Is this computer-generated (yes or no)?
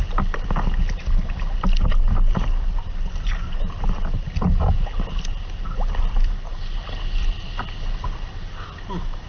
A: no